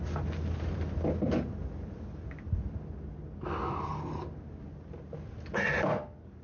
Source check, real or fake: real